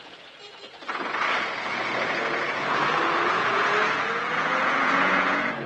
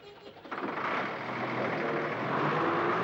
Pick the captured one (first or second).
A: second